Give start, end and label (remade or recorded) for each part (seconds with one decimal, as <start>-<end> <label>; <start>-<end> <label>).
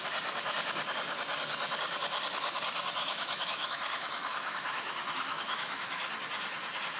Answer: 0.0-3.0 recorded; 3.0-6.1 remade; 6.1-7.0 recorded